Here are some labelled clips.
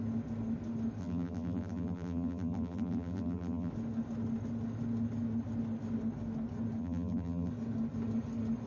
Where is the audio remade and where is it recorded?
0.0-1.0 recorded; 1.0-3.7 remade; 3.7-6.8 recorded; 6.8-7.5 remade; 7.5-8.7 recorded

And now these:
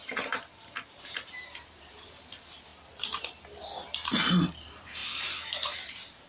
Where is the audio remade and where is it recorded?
0.0-2.1 remade; 2.1-5.0 recorded; 5.0-6.3 remade

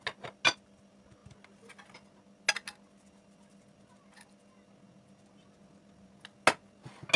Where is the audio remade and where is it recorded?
0.0-7.2 recorded

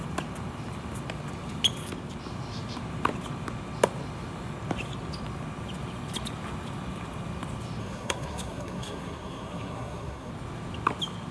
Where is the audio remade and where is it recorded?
0.0-7.8 recorded; 7.8-10.3 remade; 10.3-11.3 recorded

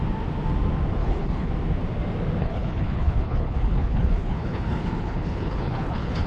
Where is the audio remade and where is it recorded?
0.0-1.0 recorded; 1.0-1.5 remade; 1.5-2.4 recorded; 2.4-6.3 remade

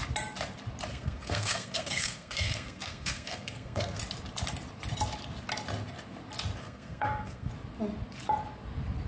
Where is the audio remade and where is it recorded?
0.0-0.9 recorded; 0.9-4.0 remade; 4.0-6.6 recorded; 6.6-7.5 remade; 7.5-9.1 recorded

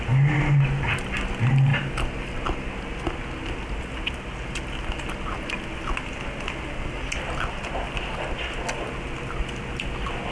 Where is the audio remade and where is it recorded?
0.0-10.3 recorded

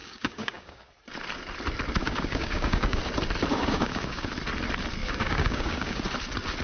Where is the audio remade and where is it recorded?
0.0-0.9 remade; 0.9-2.0 recorded; 2.0-3.0 remade; 3.0-3.5 recorded; 3.5-4.3 remade; 4.3-5.0 recorded; 5.0-6.0 remade; 6.0-6.6 recorded